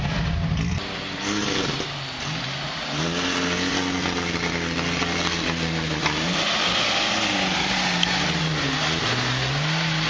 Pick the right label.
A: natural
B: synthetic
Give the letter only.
A